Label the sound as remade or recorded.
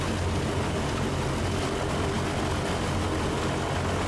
recorded